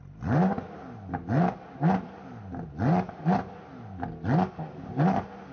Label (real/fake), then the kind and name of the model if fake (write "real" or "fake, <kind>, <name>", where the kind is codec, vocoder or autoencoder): real